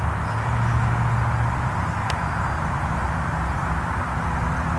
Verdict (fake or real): real